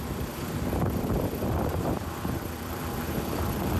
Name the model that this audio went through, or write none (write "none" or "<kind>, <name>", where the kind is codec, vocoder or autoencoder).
vocoder, BigVGAN v2